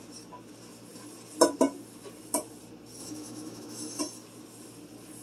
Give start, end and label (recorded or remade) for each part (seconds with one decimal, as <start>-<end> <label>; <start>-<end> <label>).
0.0-3.0 recorded; 3.0-4.0 remade; 4.0-5.2 recorded